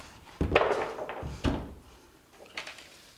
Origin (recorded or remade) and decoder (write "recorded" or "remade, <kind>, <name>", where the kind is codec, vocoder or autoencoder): remade, vocoder, BigVGAN v2